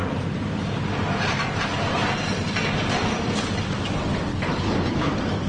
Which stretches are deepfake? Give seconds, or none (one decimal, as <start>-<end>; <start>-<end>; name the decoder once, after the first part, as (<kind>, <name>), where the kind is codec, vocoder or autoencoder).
4.3-5.1 (codec, HILCodec)